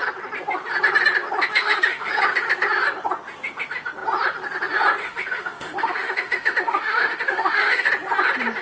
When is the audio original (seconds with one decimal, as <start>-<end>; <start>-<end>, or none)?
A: 0.0-1.6; 2.1-5.0; 7.9-8.6